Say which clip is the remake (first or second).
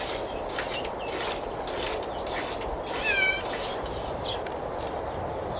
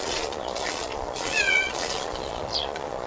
second